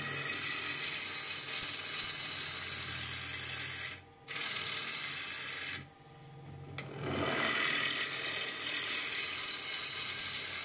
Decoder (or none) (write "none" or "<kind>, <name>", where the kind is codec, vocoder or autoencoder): none